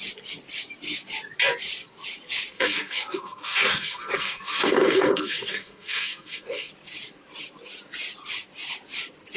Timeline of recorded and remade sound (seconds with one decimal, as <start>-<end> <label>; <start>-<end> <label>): 0.0-2.5 recorded; 2.5-6.7 remade; 6.7-9.4 recorded